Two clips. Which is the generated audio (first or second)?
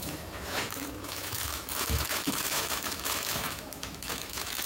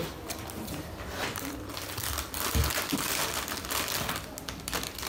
first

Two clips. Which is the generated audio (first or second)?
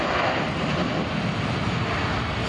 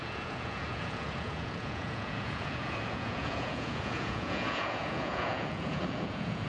second